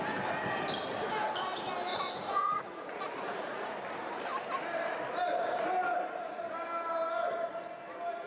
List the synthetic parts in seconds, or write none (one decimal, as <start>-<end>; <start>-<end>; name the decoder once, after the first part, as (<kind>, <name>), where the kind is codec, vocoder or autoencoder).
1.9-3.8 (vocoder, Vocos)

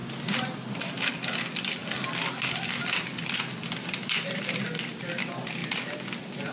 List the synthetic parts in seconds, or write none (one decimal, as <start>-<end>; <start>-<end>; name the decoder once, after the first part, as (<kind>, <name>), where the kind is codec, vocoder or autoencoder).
none

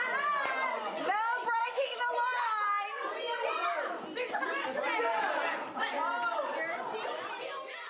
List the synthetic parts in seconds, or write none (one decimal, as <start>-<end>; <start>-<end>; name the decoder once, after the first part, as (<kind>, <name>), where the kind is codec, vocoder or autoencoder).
1.6-2.1 (codec, SNAC)